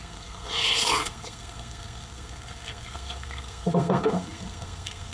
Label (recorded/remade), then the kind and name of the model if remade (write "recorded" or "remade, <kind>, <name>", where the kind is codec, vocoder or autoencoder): remade, codec, SNAC